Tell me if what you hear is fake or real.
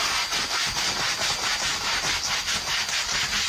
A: real